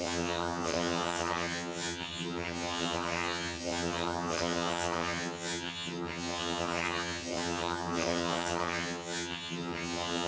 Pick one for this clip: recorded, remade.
remade